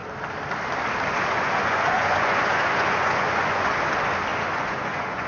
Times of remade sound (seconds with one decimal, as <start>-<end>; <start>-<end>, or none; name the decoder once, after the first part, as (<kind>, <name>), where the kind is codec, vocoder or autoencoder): 1.3-3.9 (vocoder, Vocos); 4.3-5.3